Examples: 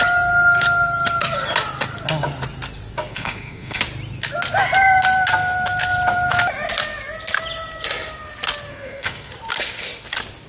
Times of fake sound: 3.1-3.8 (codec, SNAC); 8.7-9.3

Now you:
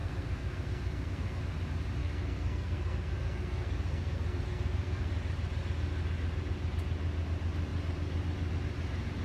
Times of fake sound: 0.0-1.4 (codec, SNAC); 2.0-5.1

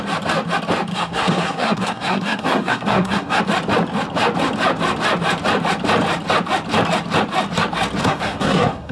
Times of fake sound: 0.9-3.4 (codec, SNAC); 8.0-8.9

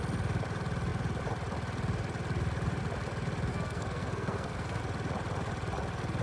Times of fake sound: 3.5-4.8 (codec, SNAC)